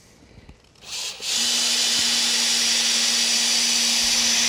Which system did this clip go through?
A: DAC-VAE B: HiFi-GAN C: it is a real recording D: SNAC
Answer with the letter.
C